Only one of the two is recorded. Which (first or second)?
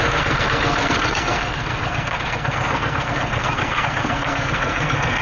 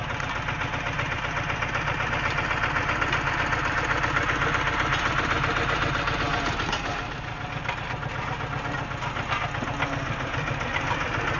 second